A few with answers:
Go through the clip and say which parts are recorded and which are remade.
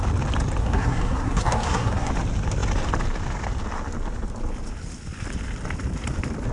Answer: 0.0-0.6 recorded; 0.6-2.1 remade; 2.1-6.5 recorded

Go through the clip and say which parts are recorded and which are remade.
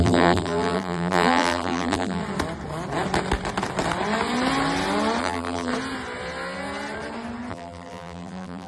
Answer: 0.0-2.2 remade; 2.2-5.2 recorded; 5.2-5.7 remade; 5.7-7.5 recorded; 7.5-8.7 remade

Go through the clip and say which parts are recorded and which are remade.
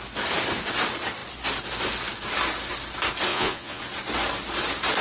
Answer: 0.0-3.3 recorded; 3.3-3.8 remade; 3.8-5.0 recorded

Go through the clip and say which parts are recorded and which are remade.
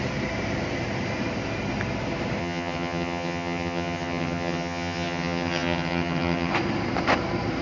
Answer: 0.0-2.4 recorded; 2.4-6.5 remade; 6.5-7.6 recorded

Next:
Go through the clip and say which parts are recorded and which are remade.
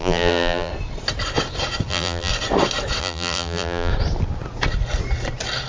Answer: 0.0-0.7 remade; 0.7-1.9 recorded; 1.9-2.3 remade; 2.3-3.0 recorded; 3.0-3.9 remade; 3.9-5.7 recorded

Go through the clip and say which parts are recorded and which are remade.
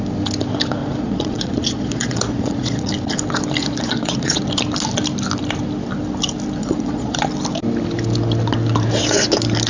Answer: 0.0-0.8 recorded; 0.8-2.9 remade; 2.9-3.6 recorded; 3.6-4.4 remade; 4.4-6.6 recorded; 6.6-7.2 remade; 7.2-9.7 recorded